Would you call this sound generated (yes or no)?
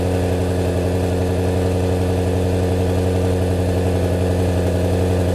no